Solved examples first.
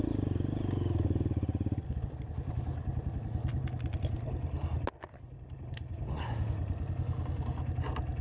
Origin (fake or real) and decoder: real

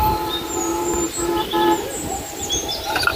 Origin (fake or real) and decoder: fake, vocoder, BigVGAN v2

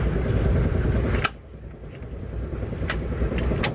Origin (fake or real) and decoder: real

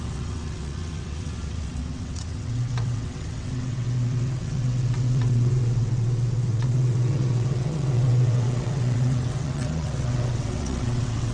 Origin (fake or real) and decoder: fake, vocoder, WaveNeXt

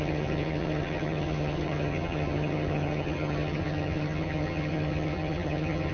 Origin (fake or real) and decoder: fake, vocoder, HiFi-GAN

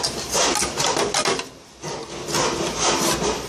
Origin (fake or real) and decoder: real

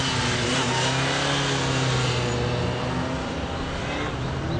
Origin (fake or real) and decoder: real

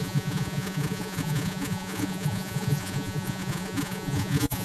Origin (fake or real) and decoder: fake, vocoder, Vocos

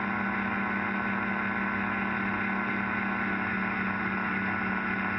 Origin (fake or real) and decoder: real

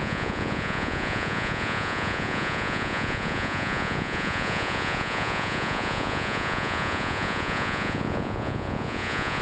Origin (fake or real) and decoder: fake, vocoder, Vocos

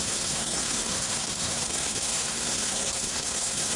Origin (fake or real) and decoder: fake, codec, SNAC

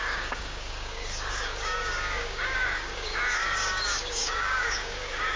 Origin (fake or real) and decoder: fake, codec, DAC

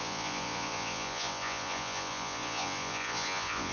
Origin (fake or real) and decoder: fake, vocoder, Vocos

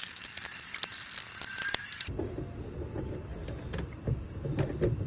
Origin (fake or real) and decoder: real